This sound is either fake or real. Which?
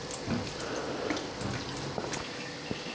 real